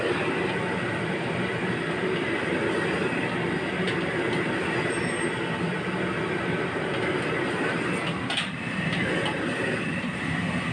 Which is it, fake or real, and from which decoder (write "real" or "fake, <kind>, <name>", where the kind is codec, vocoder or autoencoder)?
real